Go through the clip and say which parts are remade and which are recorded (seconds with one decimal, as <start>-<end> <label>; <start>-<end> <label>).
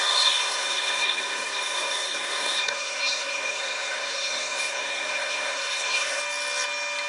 0.0-6.2 remade; 6.2-7.1 recorded